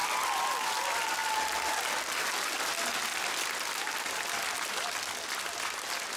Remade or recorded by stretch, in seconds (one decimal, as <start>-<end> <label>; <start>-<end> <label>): 0.0-0.7 remade; 0.7-6.2 recorded